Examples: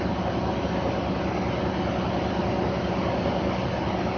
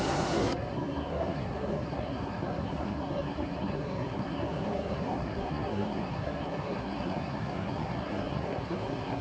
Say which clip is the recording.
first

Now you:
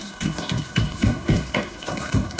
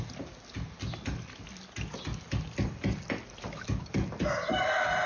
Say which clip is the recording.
second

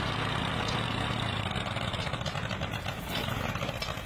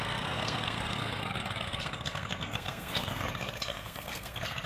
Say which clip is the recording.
first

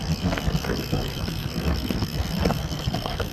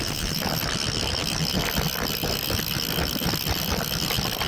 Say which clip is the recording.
second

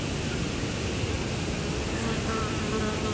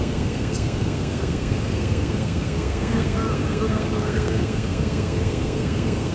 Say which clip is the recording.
first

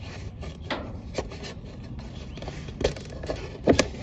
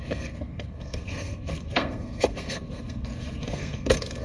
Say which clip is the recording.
first